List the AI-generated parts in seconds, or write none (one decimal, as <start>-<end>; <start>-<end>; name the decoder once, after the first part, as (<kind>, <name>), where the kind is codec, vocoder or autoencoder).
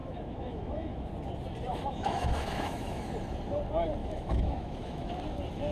0.0-1.1 (autoencoder, DAC-VAE); 1.7-3.1; 4.0-5.1